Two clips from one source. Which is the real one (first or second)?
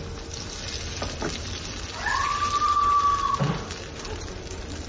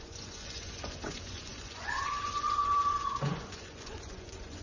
first